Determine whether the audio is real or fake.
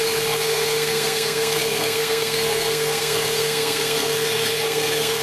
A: fake